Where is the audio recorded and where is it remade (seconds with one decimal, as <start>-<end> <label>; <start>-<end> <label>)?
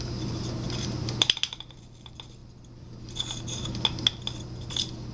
0.0-5.1 recorded